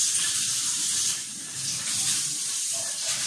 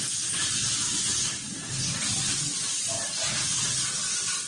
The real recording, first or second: second